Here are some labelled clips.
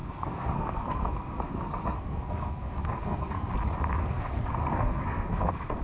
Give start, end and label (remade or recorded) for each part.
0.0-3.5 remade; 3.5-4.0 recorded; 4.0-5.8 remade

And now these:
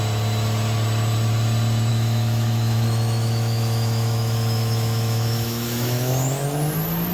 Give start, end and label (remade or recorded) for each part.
0.0-1.9 recorded; 1.9-6.1 remade; 6.1-7.1 recorded

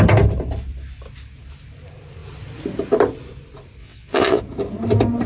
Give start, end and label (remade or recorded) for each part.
0.0-3.8 recorded; 3.8-4.4 remade; 4.4-5.3 recorded